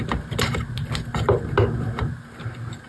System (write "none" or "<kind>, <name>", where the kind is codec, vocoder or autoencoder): none